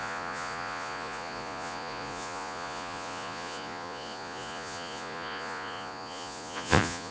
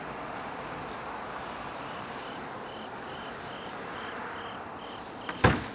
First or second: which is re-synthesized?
first